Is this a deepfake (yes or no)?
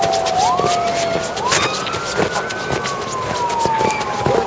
no